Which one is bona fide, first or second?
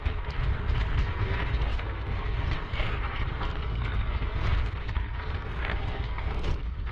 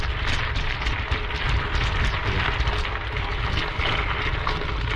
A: second